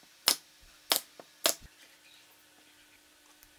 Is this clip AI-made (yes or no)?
no